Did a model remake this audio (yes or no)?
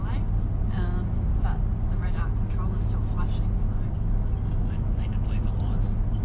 no